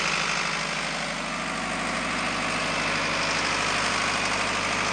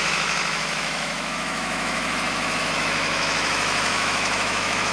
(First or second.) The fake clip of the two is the second